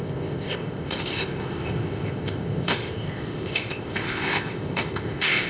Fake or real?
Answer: fake